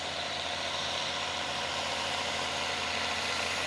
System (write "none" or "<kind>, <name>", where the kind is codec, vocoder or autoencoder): vocoder, BigVGAN v2